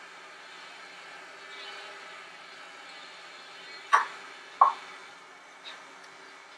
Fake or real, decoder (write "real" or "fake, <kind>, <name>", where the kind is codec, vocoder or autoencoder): real